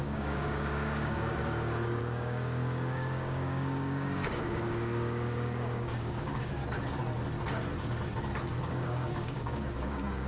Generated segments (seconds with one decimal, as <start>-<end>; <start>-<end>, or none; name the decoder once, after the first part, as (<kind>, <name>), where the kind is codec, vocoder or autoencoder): 0.0-1.4 (codec, DAC); 2.0-6.6; 8.6-10.3